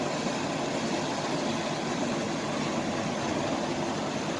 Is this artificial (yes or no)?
no